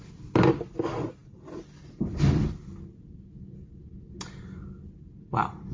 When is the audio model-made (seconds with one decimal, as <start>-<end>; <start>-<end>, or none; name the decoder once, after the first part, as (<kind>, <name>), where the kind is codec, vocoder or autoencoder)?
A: 1.2-2.6 (vocoder, BigVGAN v2)